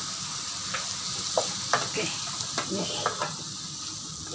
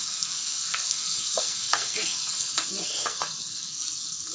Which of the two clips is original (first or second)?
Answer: first